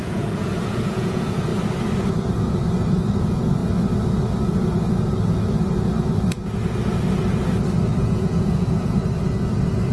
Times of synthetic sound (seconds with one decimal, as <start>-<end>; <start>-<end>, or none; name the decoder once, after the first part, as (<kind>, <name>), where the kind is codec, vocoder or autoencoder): 0.0-1.5 (vocoder, Vocos); 3.2-3.6; 8.0-9.0